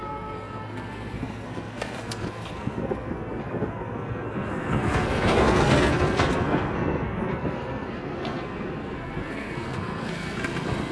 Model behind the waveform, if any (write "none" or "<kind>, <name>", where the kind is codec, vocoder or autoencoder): codec, SNAC